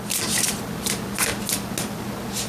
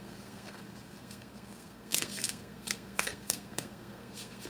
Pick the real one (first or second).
first